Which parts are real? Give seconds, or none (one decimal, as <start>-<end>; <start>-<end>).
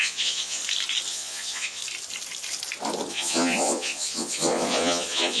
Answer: 0.6-1.1; 1.8-3.1